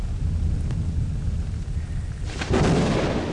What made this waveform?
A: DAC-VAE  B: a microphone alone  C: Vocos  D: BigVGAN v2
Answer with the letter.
B